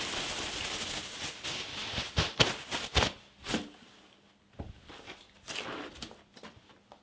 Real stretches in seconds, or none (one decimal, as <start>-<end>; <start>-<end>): 0.0-7.0